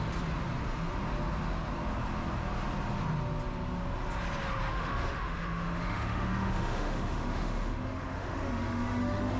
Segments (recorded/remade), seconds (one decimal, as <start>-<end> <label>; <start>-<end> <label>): 0.0-4.7 recorded; 4.7-9.4 remade